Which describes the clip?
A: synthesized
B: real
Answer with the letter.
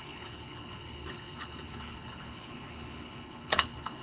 A